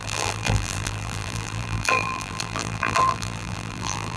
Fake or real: fake